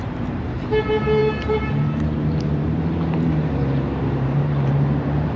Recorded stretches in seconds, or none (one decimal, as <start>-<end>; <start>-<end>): none